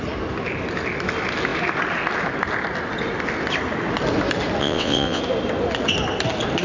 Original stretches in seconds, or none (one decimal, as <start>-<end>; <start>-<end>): 0.0-4.6; 5.2-6.6